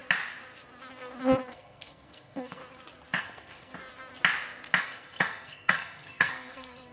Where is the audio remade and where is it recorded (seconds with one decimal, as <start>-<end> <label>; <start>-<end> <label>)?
0.0-1.5 recorded; 1.5-2.6 remade; 2.6-3.2 recorded; 3.2-3.7 remade; 3.7-4.8 recorded; 4.8-6.9 remade